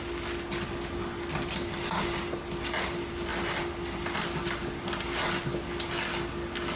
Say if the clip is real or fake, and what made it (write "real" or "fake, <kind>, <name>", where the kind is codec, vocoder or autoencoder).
real